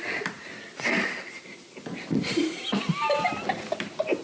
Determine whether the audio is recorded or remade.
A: recorded